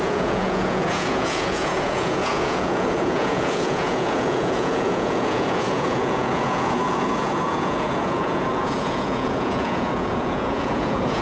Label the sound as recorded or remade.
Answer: remade